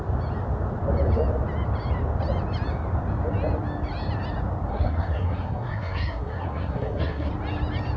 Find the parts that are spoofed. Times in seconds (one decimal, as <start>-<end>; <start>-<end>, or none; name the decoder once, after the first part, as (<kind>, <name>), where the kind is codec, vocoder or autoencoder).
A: 4.7-7.3 (codec, SNAC)